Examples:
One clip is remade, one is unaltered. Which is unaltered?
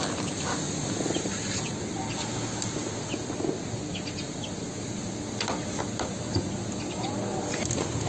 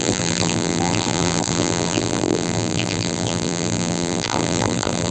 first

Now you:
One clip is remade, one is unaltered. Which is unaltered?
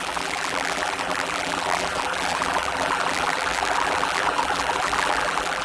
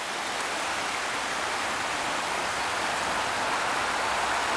second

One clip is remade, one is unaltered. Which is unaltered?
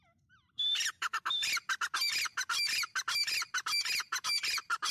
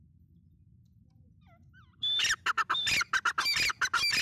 second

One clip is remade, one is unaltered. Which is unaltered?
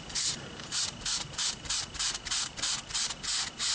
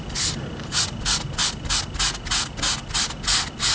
second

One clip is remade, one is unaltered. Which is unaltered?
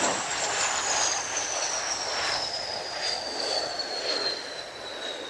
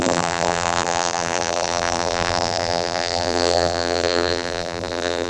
first